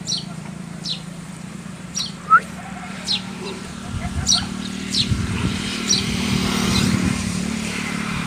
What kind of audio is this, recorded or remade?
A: remade